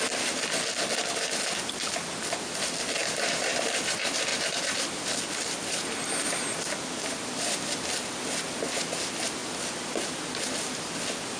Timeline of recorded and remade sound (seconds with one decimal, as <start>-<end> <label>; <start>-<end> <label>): 0.0-3.0 recorded; 3.0-3.8 remade; 3.8-11.4 recorded